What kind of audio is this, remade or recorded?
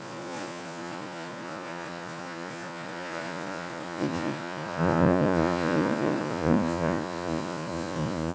remade